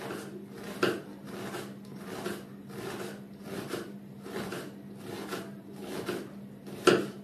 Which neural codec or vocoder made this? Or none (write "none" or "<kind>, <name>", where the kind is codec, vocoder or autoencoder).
none